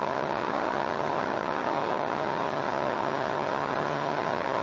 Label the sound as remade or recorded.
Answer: remade